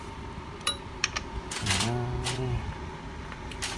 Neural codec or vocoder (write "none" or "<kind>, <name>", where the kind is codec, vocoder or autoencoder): vocoder, BigVGAN v2